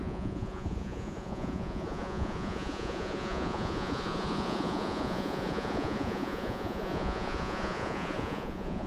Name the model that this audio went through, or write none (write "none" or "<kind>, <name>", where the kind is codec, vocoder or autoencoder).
vocoder, Vocos